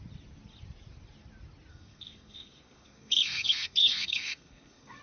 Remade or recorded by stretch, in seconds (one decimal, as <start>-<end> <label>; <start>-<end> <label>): 0.0-1.7 recorded; 1.7-5.0 remade